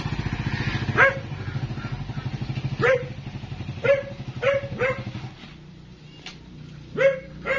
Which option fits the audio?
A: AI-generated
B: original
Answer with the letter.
B